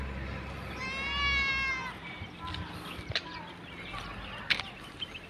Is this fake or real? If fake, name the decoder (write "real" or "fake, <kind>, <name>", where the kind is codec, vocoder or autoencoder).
real